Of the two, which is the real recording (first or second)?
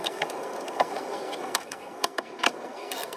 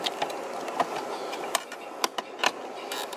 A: second